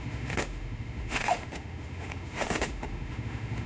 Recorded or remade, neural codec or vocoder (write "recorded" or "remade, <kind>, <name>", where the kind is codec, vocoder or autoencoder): remade, autoencoder, DAC-VAE